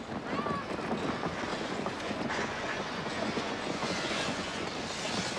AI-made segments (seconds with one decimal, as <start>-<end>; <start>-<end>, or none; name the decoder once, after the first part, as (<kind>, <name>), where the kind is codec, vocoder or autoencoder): 1.5-4.7 (vocoder, Vocos)